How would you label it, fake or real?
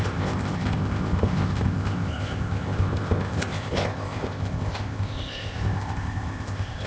fake